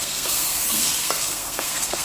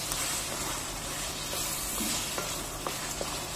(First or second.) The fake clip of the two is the first